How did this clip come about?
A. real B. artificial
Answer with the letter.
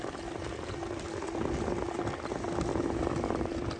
A